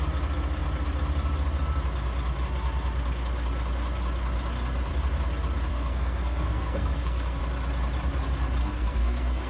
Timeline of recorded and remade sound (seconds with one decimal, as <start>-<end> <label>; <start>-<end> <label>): 0.0-5.7 recorded; 5.7-7.4 remade; 7.4-8.6 recorded; 8.6-9.5 remade